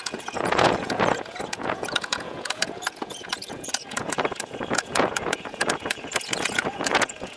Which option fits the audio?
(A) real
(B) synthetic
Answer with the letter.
B